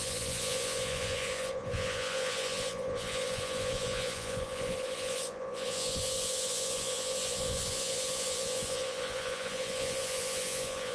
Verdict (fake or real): fake